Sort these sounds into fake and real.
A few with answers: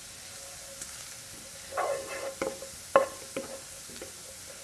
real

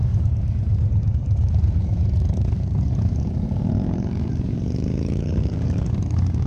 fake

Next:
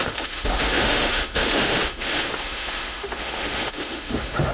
fake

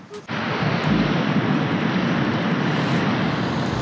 real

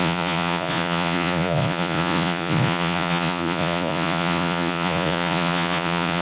fake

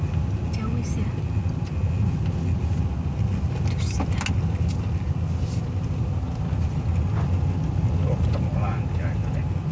real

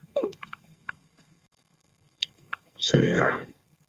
fake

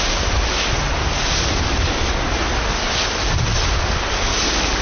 real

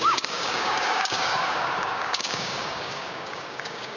fake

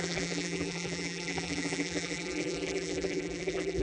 fake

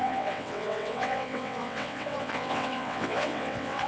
fake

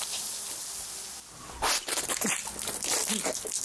real